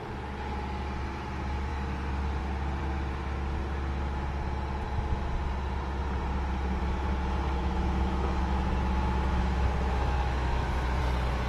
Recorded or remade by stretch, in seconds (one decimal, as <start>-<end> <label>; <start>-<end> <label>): 0.0-7.6 recorded; 7.6-11.0 remade; 11.0-11.5 recorded